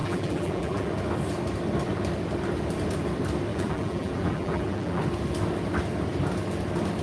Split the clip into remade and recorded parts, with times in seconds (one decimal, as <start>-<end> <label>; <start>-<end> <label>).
0.0-0.9 remade; 0.9-3.5 recorded; 3.5-5.0 remade; 5.0-7.0 recorded